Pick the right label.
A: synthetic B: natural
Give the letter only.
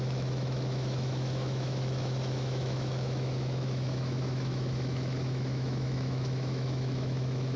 A